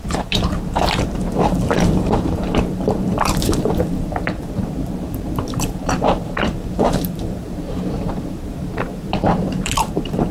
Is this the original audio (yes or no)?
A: no